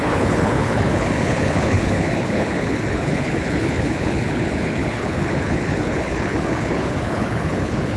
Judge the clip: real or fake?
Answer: fake